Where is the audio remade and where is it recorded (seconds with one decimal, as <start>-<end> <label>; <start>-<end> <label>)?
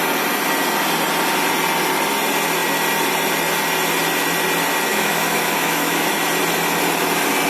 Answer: 0.0-4.9 recorded; 4.9-6.1 remade; 6.1-7.5 recorded